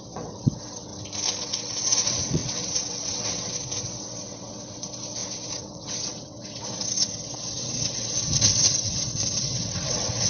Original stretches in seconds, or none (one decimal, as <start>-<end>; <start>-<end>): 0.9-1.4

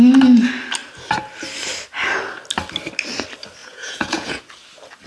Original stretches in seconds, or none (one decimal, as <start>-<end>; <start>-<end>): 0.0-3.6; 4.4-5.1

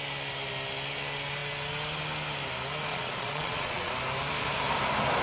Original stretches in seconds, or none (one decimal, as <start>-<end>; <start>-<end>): 0.0-2.9; 3.9-5.2